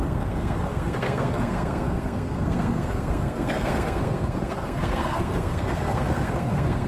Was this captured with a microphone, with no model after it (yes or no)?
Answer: no